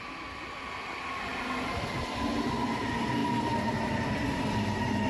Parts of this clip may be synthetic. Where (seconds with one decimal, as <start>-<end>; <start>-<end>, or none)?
3.2-4.0